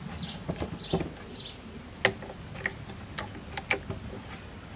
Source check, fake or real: real